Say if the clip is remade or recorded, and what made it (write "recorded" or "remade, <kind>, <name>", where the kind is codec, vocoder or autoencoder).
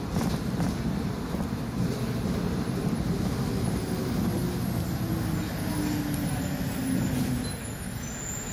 recorded